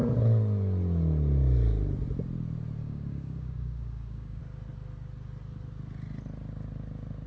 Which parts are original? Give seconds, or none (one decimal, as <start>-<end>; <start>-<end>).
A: 0.0-2.8; 4.4-7.3